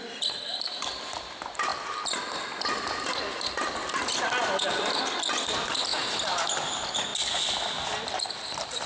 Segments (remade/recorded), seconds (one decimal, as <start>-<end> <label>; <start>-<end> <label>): 0.0-1.7 remade; 1.7-2.9 recorded; 2.9-4.1 remade; 4.1-4.7 recorded; 4.7-5.9 remade; 5.9-6.5 recorded; 6.5-7.1 remade; 7.1-8.0 recorded; 8.0-8.9 remade